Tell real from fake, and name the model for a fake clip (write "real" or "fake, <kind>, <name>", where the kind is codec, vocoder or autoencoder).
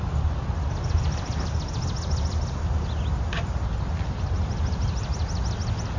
real